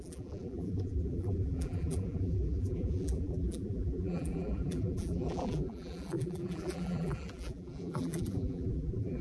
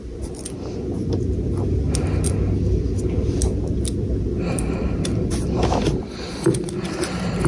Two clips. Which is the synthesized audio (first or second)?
first